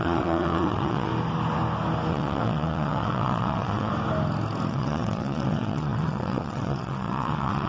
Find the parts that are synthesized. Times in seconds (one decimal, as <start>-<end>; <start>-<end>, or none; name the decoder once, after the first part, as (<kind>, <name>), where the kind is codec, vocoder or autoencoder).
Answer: 0.0-1.1 (vocoder, WaveNeXt); 2.1-3.9; 4.7-7.7